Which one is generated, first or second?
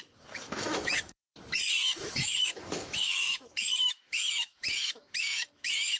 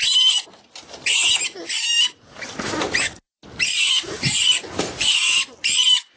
first